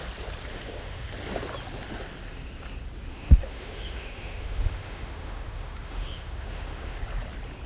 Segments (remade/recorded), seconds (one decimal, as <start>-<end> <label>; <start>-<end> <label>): 0.0-0.5 recorded; 0.5-1.1 remade; 1.1-3.1 recorded; 3.1-7.0 remade; 7.0-7.7 recorded